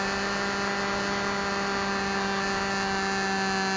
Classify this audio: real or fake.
real